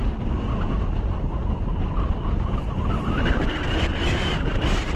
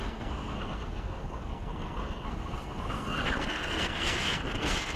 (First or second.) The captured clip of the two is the first